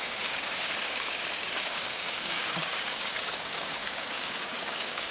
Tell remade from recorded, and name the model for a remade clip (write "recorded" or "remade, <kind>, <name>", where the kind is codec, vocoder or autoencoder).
remade, codec, DAC